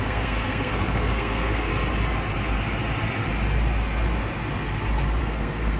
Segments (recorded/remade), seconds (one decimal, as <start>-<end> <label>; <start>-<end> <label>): 0.0-1.7 remade; 1.7-5.2 recorded; 5.2-5.8 remade